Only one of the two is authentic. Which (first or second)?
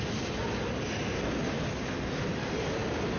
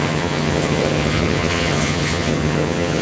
first